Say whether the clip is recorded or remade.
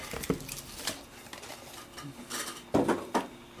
recorded